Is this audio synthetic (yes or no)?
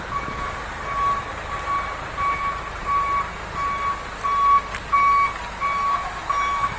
no